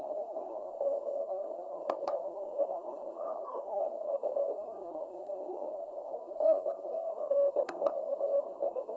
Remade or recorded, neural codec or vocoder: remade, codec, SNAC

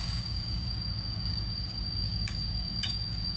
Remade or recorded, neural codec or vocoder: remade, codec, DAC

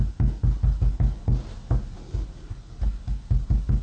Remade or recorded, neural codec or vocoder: recorded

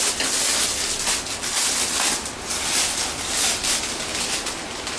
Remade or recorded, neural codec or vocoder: recorded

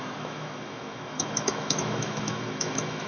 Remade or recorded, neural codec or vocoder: remade, autoencoder, DAC-VAE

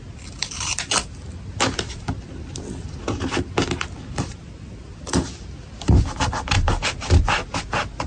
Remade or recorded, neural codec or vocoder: recorded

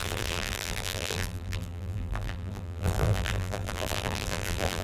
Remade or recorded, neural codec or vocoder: remade, vocoder, BigVGAN v2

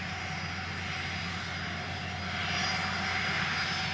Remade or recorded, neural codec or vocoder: recorded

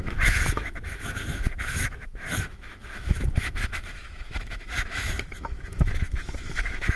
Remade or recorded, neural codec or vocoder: remade, autoencoder, DAC-VAE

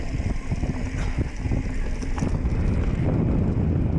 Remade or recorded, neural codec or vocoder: recorded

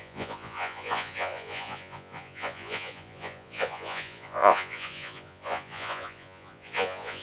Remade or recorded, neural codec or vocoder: remade, vocoder, Vocos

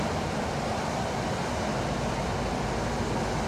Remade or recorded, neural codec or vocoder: recorded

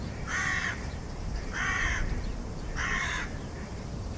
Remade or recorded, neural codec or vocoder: remade, vocoder, BigVGAN v2